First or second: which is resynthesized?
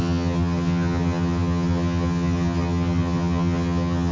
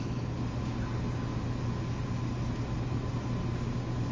first